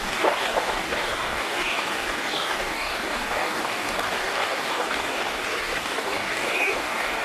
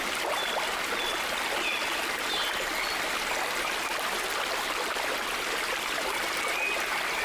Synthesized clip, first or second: first